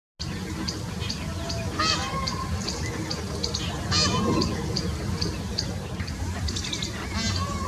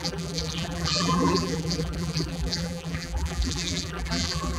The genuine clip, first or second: first